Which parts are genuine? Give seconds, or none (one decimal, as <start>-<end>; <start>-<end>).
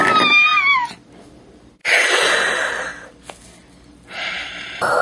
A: 0.0-5.0